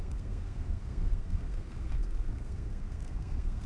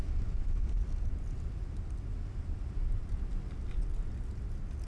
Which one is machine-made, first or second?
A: first